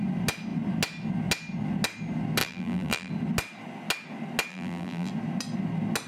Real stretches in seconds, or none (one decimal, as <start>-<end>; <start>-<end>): 0.0-2.4; 3.1-4.5; 5.1-6.1

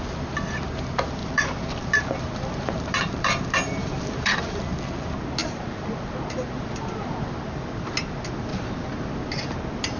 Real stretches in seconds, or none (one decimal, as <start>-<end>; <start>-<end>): 0.0-1.2; 4.6-5.4; 5.9-8.5; 9.1-10.0

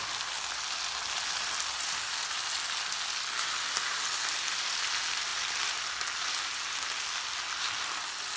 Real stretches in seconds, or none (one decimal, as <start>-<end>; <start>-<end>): 0.0-8.4

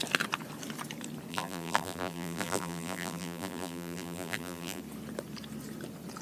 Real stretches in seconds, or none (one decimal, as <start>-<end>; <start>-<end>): 0.0-1.3; 4.8-6.2